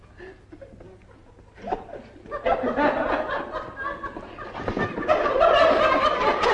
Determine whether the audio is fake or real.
real